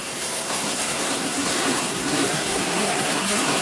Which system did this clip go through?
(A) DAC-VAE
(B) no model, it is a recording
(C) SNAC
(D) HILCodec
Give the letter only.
C